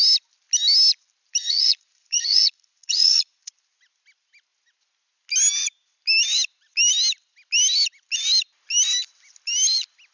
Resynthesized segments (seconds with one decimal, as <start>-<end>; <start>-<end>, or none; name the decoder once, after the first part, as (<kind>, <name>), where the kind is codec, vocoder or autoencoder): 1.4-3.5 (vocoder, Vocos)